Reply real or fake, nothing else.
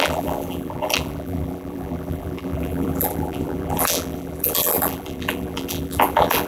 fake